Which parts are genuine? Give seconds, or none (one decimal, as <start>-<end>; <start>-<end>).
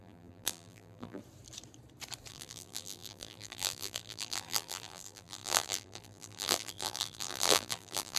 1.2-2.3